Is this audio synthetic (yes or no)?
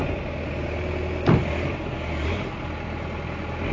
no